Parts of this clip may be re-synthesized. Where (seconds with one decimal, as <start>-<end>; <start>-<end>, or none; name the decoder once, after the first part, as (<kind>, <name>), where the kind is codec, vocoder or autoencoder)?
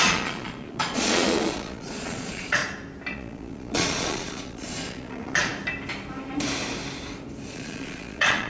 0.0-2.6 (vocoder, Vocos); 3.1-5.5; 7.5-8.5